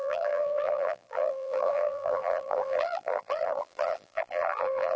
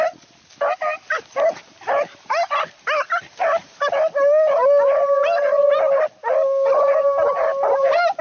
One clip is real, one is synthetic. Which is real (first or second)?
second